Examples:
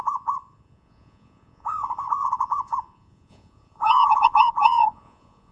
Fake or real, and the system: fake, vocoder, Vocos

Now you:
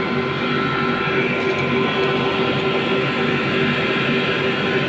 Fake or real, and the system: real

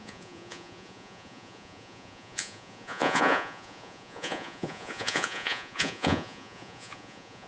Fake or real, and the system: fake, vocoder, Vocos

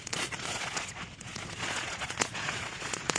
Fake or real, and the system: fake, vocoder, Vocos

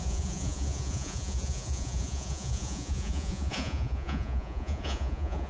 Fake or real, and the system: fake, vocoder, Vocos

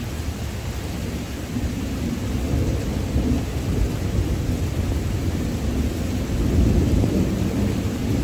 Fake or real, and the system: real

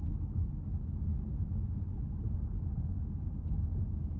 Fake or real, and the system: real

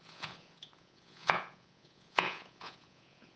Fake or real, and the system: fake, vocoder, Vocos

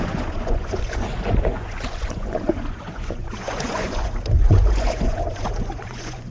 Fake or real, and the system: fake, vocoder, Vocos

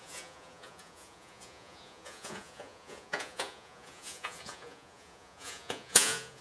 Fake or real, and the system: fake, vocoder, Vocos